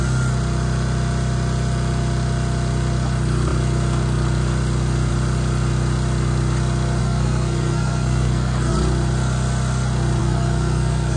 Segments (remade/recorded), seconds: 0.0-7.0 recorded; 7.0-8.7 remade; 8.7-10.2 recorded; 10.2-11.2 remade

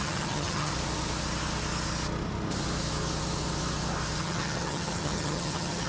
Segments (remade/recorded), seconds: 0.0-0.7 remade; 0.7-4.2 recorded; 4.2-5.9 remade